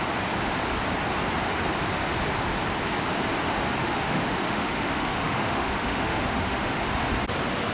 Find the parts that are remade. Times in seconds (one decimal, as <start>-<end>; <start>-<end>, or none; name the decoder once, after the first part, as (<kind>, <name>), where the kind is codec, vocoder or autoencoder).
3.8-6.8 (autoencoder, DAC-VAE)